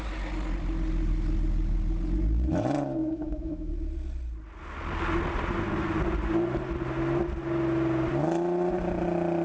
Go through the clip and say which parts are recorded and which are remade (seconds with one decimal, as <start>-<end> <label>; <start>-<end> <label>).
0.0-3.0 recorded; 3.0-3.7 remade; 3.7-9.4 recorded